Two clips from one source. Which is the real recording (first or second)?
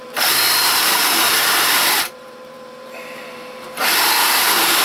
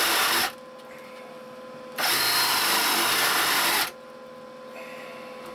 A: second